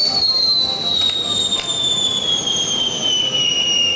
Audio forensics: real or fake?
fake